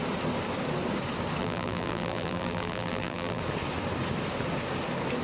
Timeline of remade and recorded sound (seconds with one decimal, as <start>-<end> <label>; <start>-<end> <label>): 0.0-1.4 recorded; 1.4-3.4 remade; 3.4-5.2 recorded